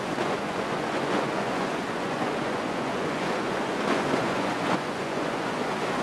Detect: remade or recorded remade